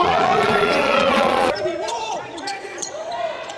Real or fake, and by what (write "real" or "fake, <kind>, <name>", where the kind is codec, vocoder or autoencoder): fake, vocoder, Vocos